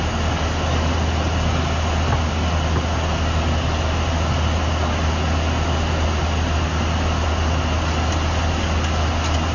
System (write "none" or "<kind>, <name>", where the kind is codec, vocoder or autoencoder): none